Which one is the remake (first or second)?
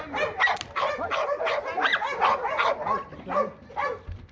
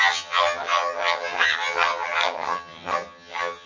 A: second